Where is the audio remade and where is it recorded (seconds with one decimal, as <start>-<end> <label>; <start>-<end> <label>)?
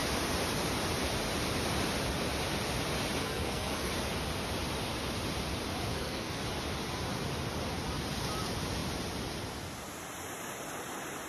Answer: 0.0-3.2 recorded; 3.2-3.9 remade; 3.9-5.9 recorded; 5.9-6.4 remade; 6.4-11.3 recorded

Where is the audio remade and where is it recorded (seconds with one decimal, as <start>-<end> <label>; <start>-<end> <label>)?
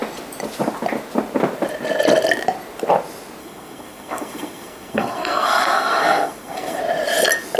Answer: 0.0-3.4 recorded; 3.4-6.8 remade; 6.8-7.6 recorded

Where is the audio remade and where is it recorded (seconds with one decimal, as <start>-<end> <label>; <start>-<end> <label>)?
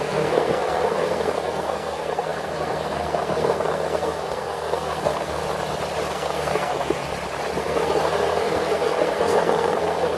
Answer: 0.0-5.4 remade; 5.4-6.1 recorded; 6.1-7.1 remade; 7.1-7.6 recorded; 7.6-10.2 remade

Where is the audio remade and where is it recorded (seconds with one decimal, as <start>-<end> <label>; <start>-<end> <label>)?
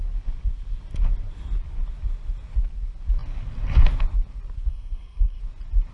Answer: 0.0-4.7 recorded; 4.7-5.4 remade; 5.4-5.9 recorded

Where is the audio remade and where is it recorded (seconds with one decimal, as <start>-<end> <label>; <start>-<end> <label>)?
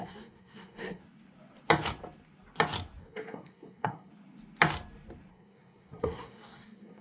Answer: 0.0-1.0 remade; 1.0-3.0 recorded; 3.0-4.1 remade; 4.1-5.3 recorded; 5.3-7.0 remade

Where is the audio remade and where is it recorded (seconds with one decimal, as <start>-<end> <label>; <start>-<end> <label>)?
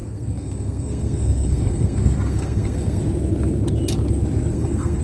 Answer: 0.0-3.0 remade; 3.0-4.5 recorded; 4.5-5.0 remade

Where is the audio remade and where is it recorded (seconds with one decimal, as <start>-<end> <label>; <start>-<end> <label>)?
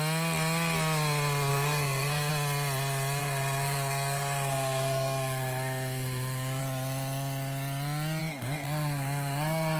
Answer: 0.0-1.5 recorded; 1.5-2.3 remade; 2.3-3.2 recorded; 3.2-6.6 remade; 6.6-8.2 recorded; 8.2-9.8 remade